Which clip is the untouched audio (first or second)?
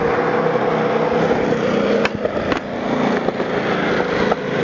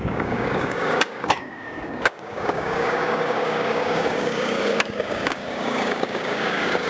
first